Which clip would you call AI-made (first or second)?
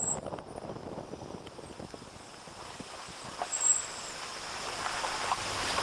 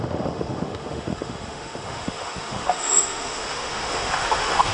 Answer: second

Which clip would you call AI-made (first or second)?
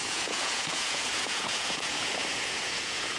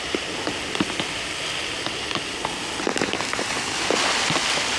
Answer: first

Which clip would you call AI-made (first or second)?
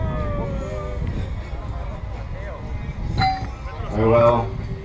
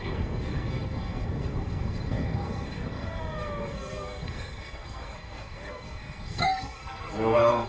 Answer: second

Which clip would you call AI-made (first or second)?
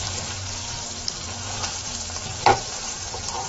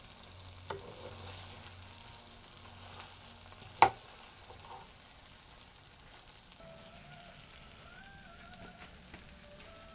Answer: first